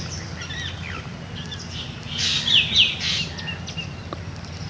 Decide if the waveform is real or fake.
real